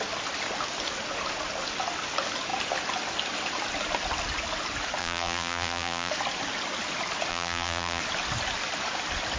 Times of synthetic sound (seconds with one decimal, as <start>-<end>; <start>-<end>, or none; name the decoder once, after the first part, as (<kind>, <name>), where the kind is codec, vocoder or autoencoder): 5.0-6.1 (vocoder, BigVGAN v2); 7.3-8.0